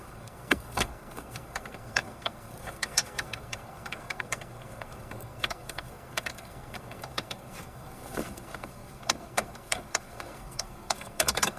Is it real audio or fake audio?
fake